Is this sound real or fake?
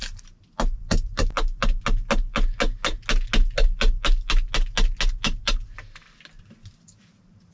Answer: real